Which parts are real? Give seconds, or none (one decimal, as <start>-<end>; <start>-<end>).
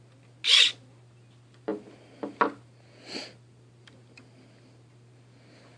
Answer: 0.0-5.8